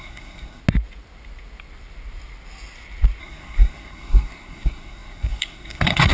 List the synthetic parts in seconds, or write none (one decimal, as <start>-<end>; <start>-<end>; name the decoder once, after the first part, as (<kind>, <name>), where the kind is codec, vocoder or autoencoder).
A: 0.0-0.6 (codec, SNAC); 3.2-6.1